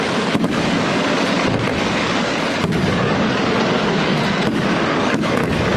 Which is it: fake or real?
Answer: fake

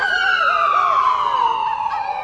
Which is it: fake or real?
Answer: real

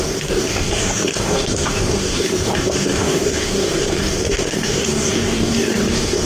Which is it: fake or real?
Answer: fake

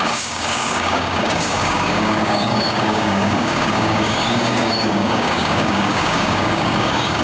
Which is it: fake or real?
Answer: fake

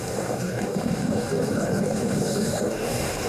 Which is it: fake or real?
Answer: fake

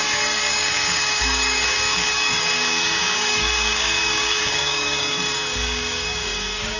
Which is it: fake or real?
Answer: fake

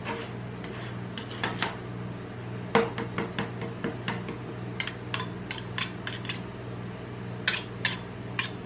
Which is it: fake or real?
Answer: real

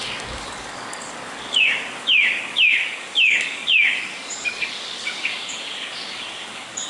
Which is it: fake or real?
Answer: fake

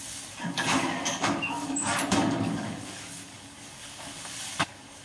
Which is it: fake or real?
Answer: fake